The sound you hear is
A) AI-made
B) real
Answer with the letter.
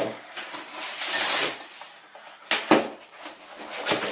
B